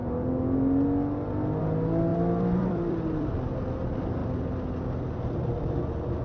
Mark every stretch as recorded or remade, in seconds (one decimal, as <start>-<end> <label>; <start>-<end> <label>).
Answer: 0.0-2.1 recorded; 2.1-3.3 remade; 3.3-6.2 recorded

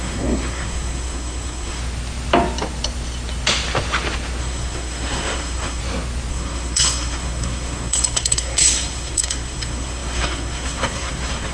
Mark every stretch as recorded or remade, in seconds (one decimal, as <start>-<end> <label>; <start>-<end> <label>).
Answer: 0.0-1.8 remade; 1.8-4.4 recorded; 4.4-5.8 remade; 5.8-6.3 recorded; 6.3-11.5 remade

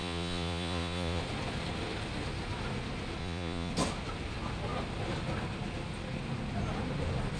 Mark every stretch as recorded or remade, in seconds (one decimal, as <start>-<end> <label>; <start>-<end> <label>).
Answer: 0.0-1.2 remade; 1.2-3.2 recorded; 3.2-3.7 remade; 3.7-7.4 recorded

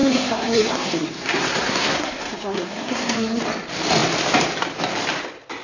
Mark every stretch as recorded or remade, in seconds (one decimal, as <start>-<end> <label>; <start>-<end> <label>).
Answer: 0.0-3.4 remade; 3.4-5.6 recorded